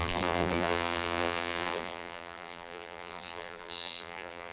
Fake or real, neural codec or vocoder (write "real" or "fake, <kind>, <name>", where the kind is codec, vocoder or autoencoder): fake, vocoder, BigVGAN v2